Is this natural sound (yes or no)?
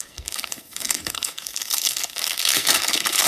no